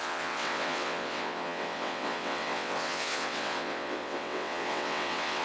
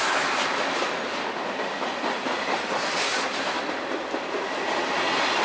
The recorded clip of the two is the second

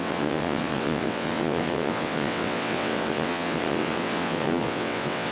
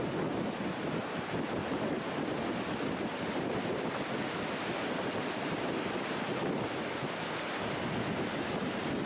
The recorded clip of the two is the second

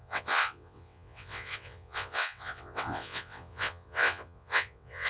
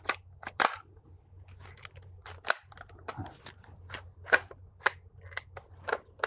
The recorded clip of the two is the second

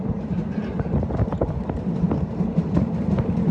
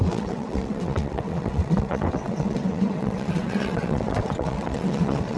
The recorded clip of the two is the first